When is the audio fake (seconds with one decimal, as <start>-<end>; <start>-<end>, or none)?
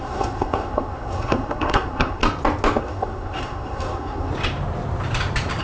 0.0-2.2; 2.8-4.3